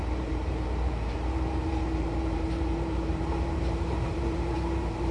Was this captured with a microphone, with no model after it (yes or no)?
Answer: no